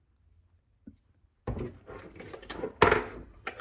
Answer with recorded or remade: recorded